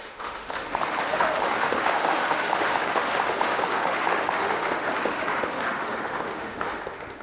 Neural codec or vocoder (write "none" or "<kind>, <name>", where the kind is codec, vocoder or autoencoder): autoencoder, DAC-VAE